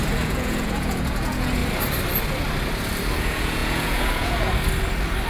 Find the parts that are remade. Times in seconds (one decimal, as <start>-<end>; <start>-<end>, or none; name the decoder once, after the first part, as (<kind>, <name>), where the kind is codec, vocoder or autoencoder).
0.0-1.6 (vocoder, Vocos); 3.2-4.5